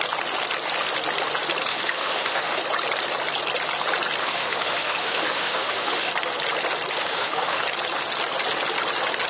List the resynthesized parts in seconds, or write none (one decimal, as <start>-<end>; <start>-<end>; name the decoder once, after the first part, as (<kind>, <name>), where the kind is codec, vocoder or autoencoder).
1.7-2.6 (autoencoder, DAC-VAE); 4.2-6.1; 7.0-7.6